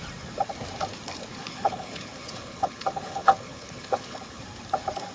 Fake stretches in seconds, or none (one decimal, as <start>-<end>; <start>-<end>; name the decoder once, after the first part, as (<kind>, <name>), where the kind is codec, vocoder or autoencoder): 1.3-4.4 (codec, HILCodec)